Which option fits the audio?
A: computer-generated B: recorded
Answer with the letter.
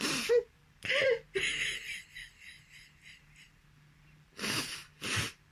A